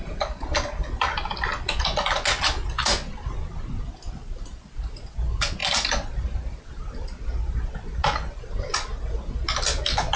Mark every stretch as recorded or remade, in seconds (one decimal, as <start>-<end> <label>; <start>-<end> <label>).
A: 0.0-10.2 recorded